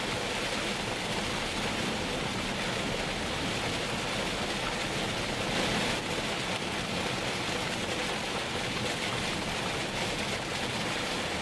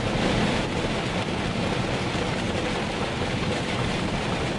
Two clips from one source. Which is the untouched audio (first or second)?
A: first